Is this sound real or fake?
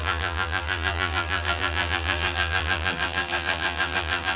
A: fake